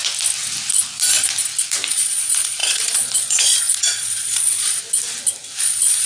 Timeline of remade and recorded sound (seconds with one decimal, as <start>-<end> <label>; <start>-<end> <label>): 0.0-1.9 recorded; 1.9-4.8 remade; 4.8-5.6 recorded; 5.6-6.1 remade